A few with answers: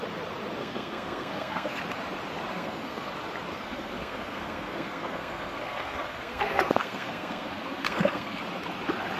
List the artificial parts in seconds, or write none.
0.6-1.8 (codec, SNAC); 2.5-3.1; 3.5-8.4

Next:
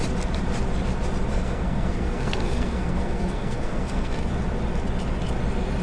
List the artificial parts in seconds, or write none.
1.3-4.3 (codec, SNAC)

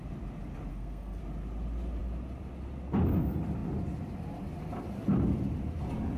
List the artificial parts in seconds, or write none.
0.7-1.2 (codec, SNAC)

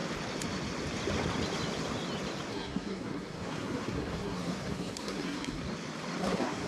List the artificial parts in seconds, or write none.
2.5-5.6 (codec, SNAC); 6.2-6.7